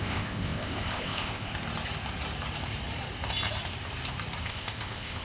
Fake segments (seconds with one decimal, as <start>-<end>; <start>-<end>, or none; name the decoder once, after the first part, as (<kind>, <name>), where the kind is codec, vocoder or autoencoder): 0.0-1.5 (codec, ZipCodec); 4.4-5.2